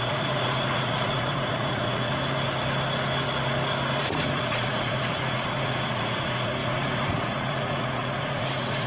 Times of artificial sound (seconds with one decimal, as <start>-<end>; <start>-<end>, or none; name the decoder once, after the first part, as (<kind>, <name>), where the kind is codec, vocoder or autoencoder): 0.0-2.1 (vocoder, Vocos); 4.0-8.9